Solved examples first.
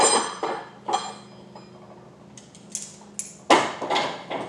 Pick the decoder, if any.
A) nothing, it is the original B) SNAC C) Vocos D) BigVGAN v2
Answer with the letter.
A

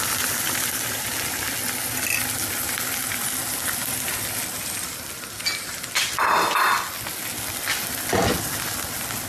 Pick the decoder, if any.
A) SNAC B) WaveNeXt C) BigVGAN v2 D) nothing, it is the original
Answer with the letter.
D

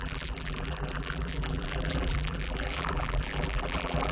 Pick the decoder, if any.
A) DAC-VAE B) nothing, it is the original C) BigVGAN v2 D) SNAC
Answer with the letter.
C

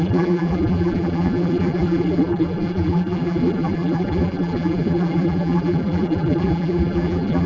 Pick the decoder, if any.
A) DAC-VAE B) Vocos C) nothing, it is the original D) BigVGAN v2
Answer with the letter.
D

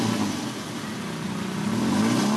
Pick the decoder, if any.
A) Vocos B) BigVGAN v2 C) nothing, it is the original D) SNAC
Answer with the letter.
C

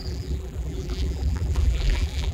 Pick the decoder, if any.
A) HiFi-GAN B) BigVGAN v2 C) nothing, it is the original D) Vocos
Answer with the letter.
B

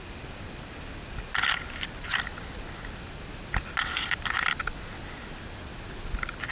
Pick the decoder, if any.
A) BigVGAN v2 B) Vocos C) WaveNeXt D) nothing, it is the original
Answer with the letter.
D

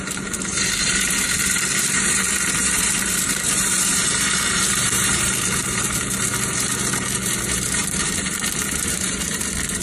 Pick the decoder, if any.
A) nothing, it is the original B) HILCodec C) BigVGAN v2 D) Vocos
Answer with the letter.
C